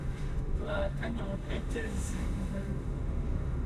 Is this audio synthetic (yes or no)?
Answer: yes